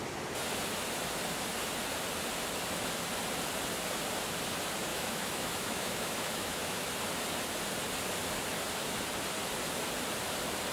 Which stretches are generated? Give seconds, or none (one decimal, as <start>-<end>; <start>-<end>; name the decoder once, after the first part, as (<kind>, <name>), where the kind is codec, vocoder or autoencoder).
4.9-6.9 (autoencoder, DAC-VAE)